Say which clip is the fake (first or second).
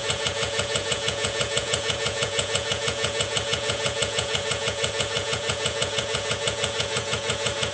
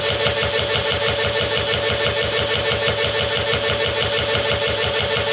first